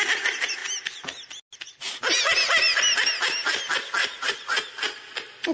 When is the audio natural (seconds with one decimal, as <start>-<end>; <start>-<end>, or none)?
0.0-4.0; 4.7-5.5